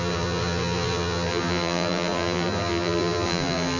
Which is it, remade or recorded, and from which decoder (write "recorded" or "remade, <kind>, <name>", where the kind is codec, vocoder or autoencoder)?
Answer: remade, vocoder, BigVGAN v2